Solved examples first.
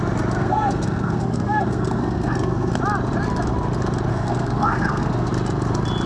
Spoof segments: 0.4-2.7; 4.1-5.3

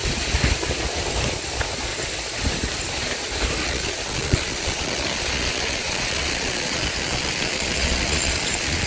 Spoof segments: 3.6-8.9

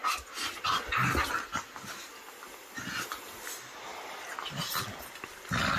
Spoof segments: none

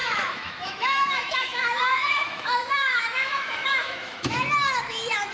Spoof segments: 0.0-5.3

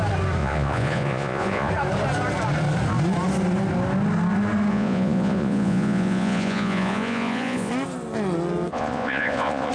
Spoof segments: 0.4-1.7; 4.7-7.7; 8.7-9.7

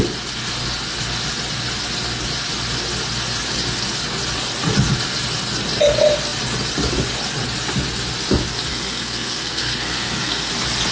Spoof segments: 8.7-10.5

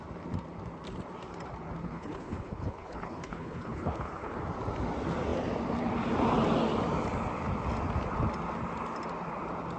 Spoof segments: 1.8-4.4